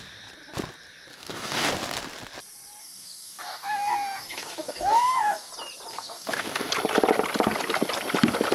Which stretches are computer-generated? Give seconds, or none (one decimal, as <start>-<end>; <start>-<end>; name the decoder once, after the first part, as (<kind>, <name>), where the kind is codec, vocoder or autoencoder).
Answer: 1.1-1.7 (codec, DAC); 2.8-5.5; 5.9-6.7